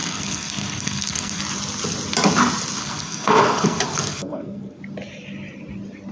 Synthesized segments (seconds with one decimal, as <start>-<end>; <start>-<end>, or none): 0.0-1.4; 2.8-4.8

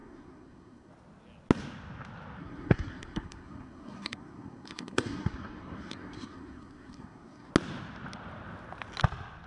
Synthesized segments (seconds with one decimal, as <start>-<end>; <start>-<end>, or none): 0.0-0.9; 2.4-7.5

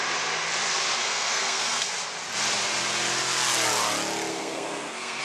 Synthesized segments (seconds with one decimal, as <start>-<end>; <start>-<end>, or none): 1.0-1.9; 4.3-5.2

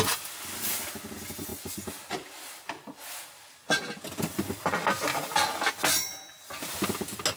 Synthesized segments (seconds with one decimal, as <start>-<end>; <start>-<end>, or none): none

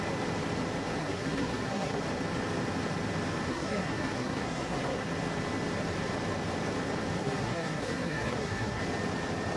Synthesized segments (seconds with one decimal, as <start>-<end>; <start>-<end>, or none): 1.0-2.0; 3.5-5.1; 7.2-8.8

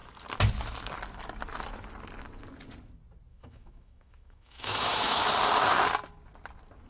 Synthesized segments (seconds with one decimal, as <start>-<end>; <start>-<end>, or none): 3.3-5.2